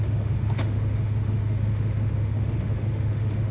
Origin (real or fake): fake